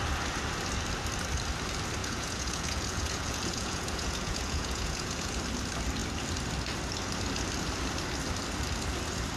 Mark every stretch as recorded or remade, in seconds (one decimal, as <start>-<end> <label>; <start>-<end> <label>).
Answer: 0.0-2.0 recorded; 2.0-5.4 remade; 5.4-9.4 recorded